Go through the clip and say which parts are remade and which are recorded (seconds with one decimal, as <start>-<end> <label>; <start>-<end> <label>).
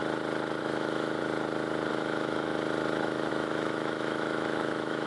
0.0-0.6 recorded; 0.6-1.2 remade; 1.2-1.9 recorded; 1.9-2.5 remade; 2.5-3.0 recorded; 3.0-5.1 remade